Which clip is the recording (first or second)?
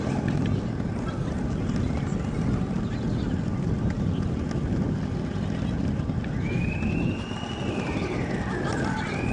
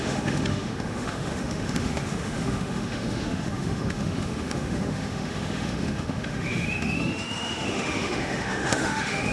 first